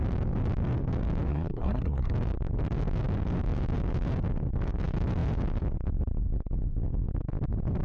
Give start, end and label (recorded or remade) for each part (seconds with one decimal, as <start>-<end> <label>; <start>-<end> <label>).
0.0-1.3 recorded; 1.3-2.1 remade; 2.1-7.8 recorded